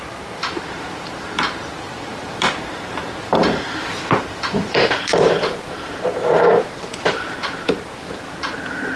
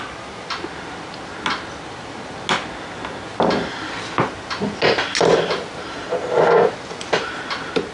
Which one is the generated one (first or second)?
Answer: first